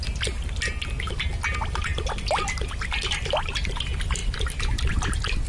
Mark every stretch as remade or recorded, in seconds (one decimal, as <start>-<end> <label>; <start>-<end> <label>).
0.0-1.9 recorded; 1.9-3.5 remade; 3.5-4.2 recorded; 4.2-4.9 remade; 4.9-5.5 recorded